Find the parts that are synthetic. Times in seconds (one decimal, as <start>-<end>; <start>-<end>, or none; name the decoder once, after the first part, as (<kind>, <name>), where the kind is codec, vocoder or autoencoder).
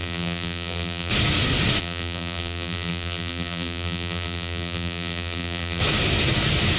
0.0-1.1 (vocoder, BigVGAN v2); 1.8-5.8